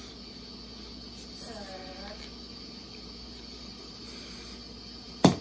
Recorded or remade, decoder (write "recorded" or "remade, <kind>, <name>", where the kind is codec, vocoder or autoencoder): recorded